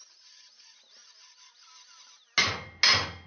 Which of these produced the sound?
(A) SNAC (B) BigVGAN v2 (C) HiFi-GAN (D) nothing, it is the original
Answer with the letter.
D